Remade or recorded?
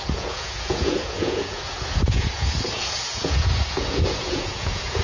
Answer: remade